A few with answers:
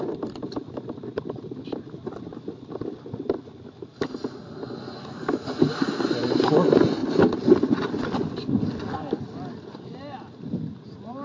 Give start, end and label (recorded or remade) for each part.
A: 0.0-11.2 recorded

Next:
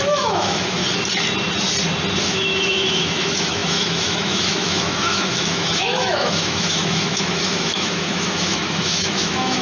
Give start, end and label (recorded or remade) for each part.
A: 0.0-0.8 remade; 0.8-2.2 recorded; 2.2-9.6 remade